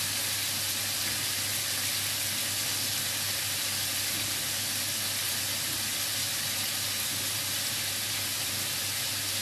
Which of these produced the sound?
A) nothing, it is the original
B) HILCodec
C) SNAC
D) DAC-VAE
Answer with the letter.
A